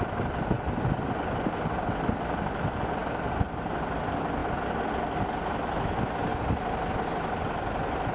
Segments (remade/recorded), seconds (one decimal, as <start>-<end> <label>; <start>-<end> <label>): 0.0-8.1 recorded